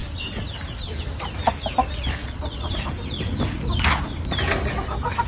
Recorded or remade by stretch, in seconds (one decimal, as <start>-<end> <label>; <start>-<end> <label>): 0.0-2.2 recorded; 2.2-2.7 remade; 2.7-5.3 recorded

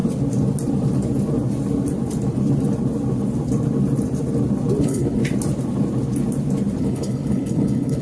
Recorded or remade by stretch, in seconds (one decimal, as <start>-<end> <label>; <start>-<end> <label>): 0.0-4.8 recorded; 4.8-5.2 remade; 5.2-6.8 recorded; 6.8-8.0 remade

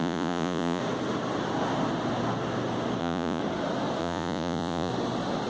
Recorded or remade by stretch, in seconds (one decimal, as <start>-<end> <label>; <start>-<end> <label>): 0.0-0.8 remade; 0.8-3.0 recorded; 3.0-3.4 remade; 3.4-4.0 recorded; 4.0-4.9 remade; 4.9-5.5 recorded

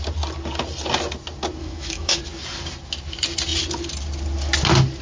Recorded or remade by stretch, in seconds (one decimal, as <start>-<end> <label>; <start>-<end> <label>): 0.0-1.6 recorded; 1.6-2.2 remade; 2.2-5.0 recorded

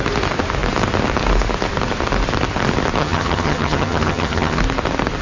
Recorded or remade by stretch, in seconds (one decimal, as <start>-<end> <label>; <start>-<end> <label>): 0.0-3.0 recorded; 3.0-4.6 remade; 4.6-5.2 recorded